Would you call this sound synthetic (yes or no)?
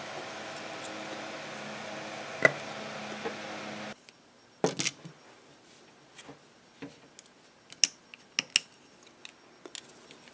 no